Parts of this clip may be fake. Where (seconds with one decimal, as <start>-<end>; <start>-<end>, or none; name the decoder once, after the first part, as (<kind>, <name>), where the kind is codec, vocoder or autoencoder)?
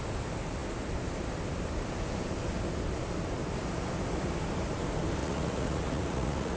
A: 5.2-6.6 (vocoder, Vocos)